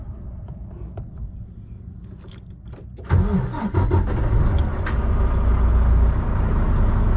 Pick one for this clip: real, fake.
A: real